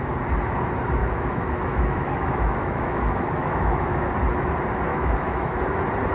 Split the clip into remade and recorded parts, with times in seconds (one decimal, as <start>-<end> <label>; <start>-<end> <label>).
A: 0.0-1.0 recorded; 1.0-4.1 remade; 4.1-4.9 recorded; 4.9-5.6 remade; 5.6-6.1 recorded